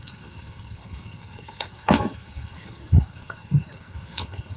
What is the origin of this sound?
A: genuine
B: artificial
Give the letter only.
B